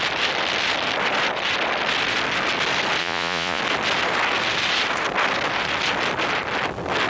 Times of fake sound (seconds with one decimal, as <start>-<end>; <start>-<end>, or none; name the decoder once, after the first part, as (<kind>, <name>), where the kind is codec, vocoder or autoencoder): 3.0-3.6 (vocoder, Vocos)